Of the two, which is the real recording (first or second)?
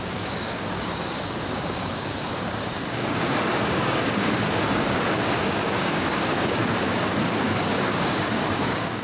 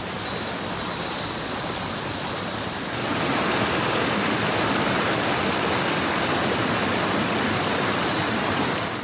second